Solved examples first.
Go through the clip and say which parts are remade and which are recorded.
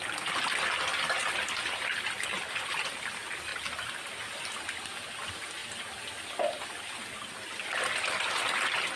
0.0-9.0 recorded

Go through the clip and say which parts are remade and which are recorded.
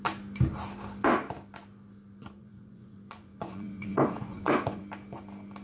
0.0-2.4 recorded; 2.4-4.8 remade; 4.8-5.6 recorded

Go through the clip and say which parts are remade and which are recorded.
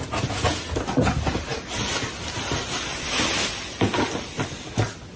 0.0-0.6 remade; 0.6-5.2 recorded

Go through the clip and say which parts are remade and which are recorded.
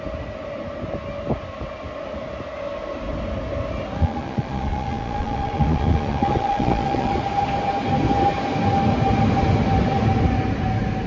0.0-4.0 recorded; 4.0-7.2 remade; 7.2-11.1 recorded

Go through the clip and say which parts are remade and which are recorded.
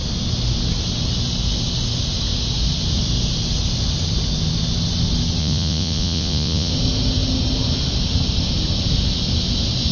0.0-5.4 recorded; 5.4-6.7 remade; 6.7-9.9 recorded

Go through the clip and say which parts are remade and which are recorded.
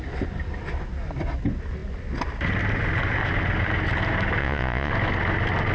0.0-4.4 recorded; 4.4-4.9 remade; 4.9-5.7 recorded